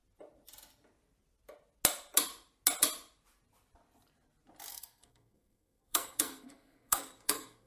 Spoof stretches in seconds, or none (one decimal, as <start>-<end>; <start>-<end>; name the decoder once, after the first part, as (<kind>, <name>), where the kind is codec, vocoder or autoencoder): 4.7-7.7 (codec, SNAC)